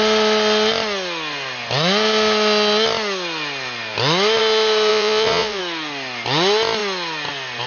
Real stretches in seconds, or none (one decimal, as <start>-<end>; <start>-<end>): 0.0-4.9; 5.6-7.7